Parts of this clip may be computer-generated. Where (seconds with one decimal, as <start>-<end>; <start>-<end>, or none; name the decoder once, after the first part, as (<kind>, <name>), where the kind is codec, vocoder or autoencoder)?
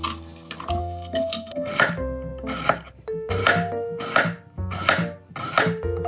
0.8-1.7 (codec, SNAC)